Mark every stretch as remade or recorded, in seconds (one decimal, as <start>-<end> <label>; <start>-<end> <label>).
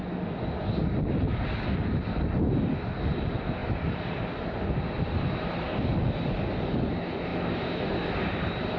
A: 0.0-8.8 recorded